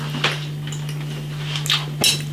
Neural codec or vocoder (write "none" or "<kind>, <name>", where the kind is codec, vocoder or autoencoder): none